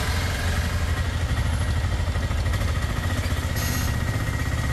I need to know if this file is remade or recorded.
recorded